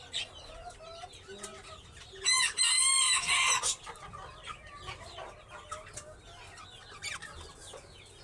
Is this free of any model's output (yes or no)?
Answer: yes